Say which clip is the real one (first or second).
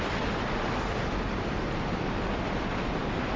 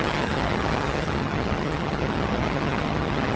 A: first